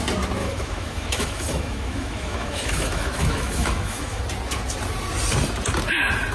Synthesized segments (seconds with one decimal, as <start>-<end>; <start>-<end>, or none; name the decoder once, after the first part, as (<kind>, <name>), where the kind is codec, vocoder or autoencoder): 0.4-4.2 (autoencoder, DAC-VAE)